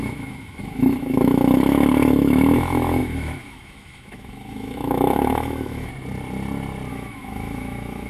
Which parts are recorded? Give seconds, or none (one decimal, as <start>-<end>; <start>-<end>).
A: 5.9-6.9